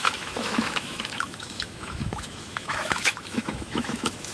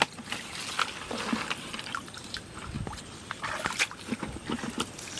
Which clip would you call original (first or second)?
second